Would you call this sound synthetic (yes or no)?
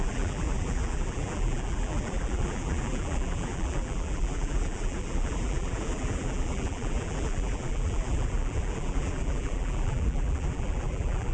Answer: yes